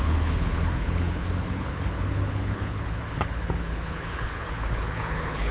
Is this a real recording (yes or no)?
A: no